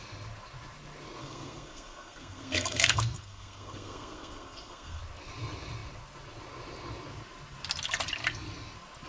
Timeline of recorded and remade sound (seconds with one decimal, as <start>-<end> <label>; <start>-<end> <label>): 0.0-1.2 recorded; 1.2-5.0 remade; 5.0-9.1 recorded